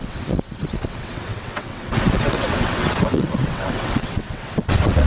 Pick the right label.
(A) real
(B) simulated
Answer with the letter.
B